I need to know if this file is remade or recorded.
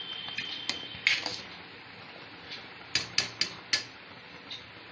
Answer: recorded